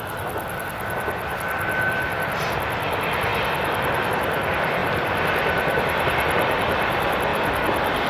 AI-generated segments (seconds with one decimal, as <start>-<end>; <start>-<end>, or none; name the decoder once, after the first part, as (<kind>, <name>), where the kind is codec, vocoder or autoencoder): 0.0-3.3 (vocoder, BigVGAN v2); 4.1-8.1